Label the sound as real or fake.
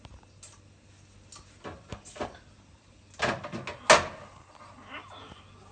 real